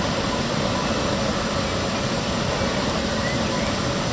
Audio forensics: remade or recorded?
recorded